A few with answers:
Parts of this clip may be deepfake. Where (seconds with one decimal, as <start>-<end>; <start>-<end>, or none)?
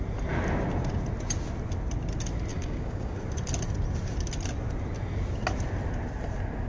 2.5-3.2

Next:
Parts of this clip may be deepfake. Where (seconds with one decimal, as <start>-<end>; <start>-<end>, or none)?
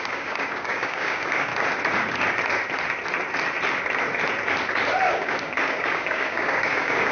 0.0-1.5; 5.0-7.1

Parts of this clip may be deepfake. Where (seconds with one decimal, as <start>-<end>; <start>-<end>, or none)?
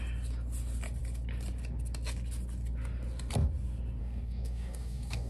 4.0-5.3